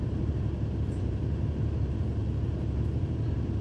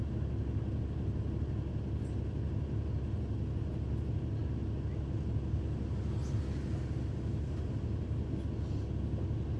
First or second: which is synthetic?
first